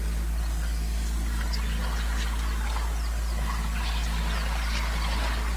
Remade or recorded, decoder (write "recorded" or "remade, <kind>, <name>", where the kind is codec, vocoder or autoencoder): recorded